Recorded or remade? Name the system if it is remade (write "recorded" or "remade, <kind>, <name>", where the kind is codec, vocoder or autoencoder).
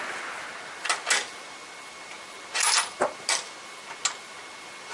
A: recorded